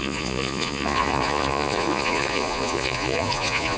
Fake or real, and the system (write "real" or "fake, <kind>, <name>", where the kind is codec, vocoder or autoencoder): fake, vocoder, Vocos